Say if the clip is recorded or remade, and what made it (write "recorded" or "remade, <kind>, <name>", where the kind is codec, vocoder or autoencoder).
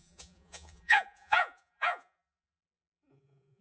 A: remade, vocoder, Vocos